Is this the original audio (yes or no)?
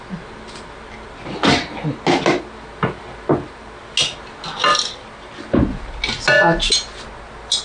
yes